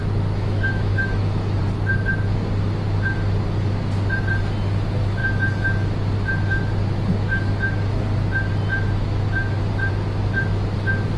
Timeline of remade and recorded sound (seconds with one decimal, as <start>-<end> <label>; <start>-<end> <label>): 0.0-1.6 remade; 1.6-11.2 recorded